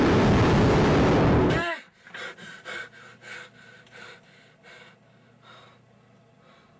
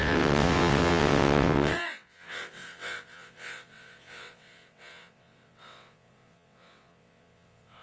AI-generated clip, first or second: second